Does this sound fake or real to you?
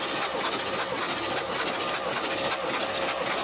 real